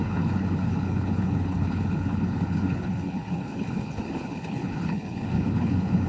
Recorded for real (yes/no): no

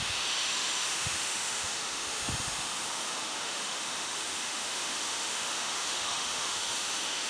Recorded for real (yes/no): no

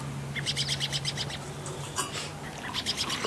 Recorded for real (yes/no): yes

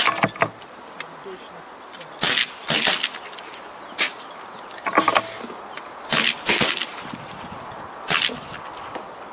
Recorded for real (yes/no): yes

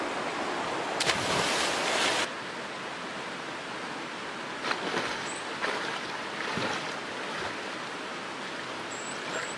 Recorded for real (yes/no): yes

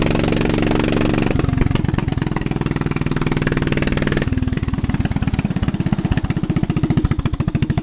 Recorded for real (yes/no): yes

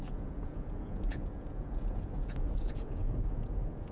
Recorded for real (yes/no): no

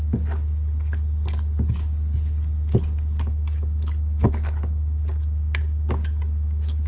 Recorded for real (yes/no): yes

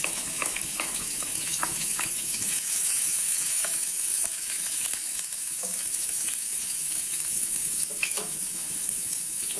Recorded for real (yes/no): no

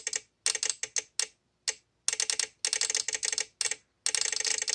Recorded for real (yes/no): yes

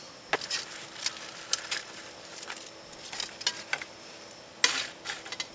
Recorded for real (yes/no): yes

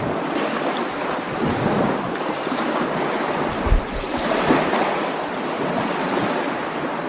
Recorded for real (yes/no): yes